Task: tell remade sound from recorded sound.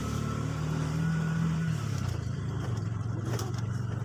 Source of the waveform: remade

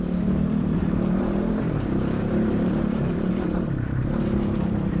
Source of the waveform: remade